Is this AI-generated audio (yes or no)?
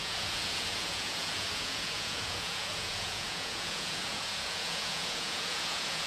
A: yes